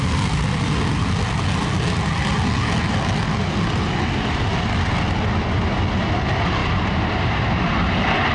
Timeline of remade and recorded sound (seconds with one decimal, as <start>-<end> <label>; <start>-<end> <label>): 0.0-6.6 recorded; 6.6-8.3 remade